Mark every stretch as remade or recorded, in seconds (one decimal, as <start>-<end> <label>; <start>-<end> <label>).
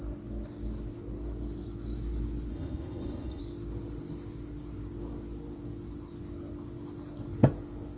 0.0-2.5 recorded; 2.5-3.4 remade; 3.4-8.0 recorded